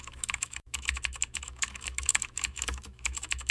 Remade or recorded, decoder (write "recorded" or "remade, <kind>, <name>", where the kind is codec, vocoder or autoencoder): remade, autoencoder, DAC-VAE